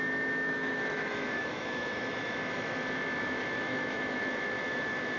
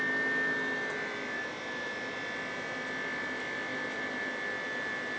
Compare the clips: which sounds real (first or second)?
second